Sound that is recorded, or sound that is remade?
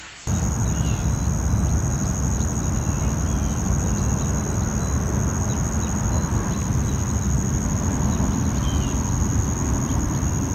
recorded